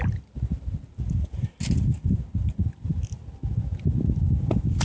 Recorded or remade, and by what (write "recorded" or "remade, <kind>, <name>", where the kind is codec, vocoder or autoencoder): recorded